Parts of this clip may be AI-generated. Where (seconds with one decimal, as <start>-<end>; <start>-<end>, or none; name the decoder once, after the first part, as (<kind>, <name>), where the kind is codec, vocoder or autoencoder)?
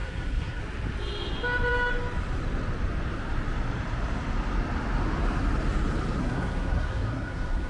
0.0-0.6 (codec, SNAC); 6.2-7.7